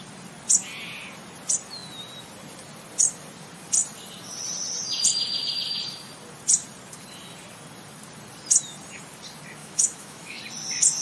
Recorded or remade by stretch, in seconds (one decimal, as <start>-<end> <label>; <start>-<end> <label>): 0.0-9.6 recorded; 9.6-10.4 remade; 10.4-11.0 recorded